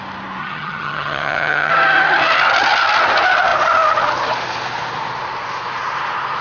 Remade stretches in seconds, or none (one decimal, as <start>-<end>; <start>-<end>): 0.4-1.7